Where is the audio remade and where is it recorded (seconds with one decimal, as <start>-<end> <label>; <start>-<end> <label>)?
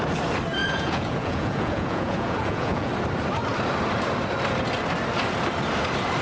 0.0-0.6 recorded; 0.6-2.9 remade; 2.9-6.2 recorded